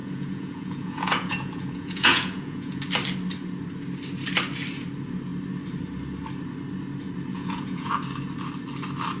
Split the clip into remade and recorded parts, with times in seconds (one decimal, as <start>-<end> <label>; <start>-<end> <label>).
0.0-2.8 remade; 2.8-7.3 recorded; 7.3-7.9 remade; 7.9-9.2 recorded